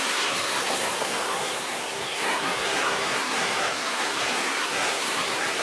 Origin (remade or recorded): remade